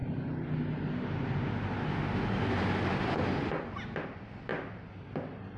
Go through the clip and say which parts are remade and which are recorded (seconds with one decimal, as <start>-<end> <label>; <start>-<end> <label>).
0.0-5.6 recorded

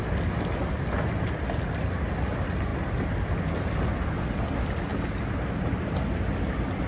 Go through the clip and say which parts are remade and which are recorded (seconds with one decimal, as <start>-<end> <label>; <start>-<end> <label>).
0.0-6.9 recorded

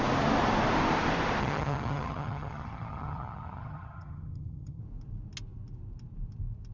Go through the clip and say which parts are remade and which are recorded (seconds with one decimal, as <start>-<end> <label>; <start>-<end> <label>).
0.0-1.4 recorded; 1.4-4.8 remade; 4.8-6.7 recorded

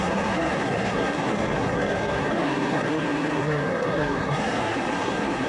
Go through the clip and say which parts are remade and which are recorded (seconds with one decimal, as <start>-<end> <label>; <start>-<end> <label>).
0.0-5.5 remade

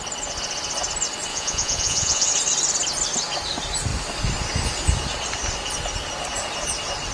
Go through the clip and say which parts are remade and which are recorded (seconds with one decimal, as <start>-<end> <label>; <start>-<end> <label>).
0.0-1.3 recorded; 1.3-2.3 remade; 2.3-7.1 recorded